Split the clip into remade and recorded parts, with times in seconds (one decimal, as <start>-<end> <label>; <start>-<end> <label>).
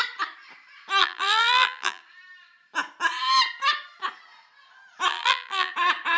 0.0-1.0 recorded; 1.0-2.0 remade; 2.0-5.1 recorded; 5.1-5.7 remade; 5.7-6.2 recorded